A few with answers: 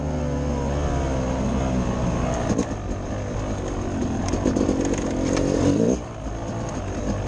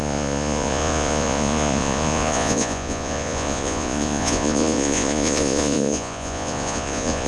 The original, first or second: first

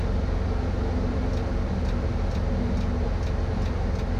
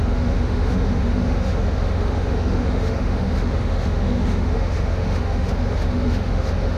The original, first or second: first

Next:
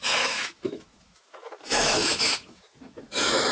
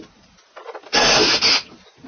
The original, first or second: second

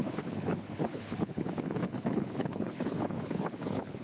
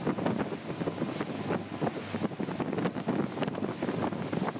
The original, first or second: second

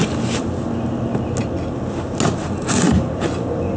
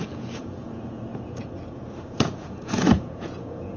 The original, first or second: first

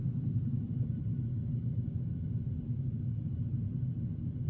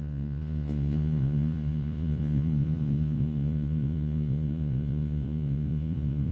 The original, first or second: first